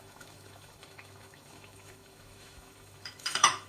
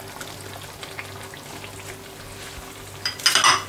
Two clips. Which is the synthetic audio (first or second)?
first